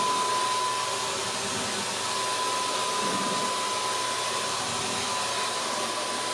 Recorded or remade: recorded